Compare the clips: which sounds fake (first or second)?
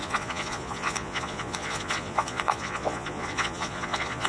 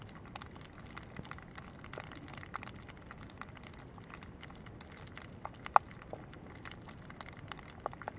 first